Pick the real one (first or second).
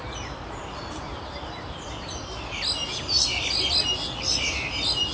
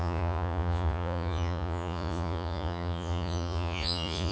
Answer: first